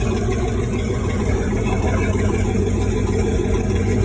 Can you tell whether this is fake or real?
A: fake